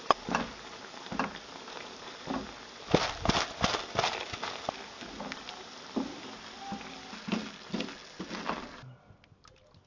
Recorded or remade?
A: recorded